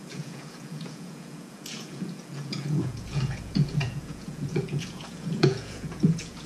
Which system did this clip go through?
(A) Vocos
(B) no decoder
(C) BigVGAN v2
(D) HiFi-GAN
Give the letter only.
A